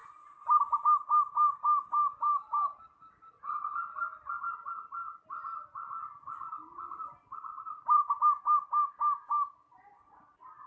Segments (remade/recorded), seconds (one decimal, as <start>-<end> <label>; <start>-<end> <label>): 0.0-10.7 recorded